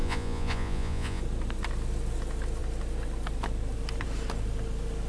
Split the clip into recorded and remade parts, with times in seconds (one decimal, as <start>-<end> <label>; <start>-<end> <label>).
0.0-1.2 remade; 1.2-5.1 recorded